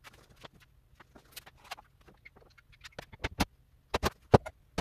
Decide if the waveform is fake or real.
real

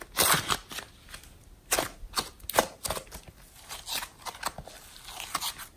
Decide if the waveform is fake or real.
real